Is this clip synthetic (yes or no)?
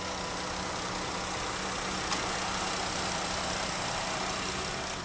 no